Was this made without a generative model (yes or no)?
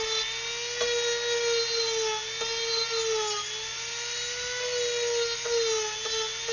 yes